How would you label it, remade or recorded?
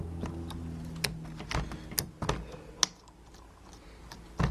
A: recorded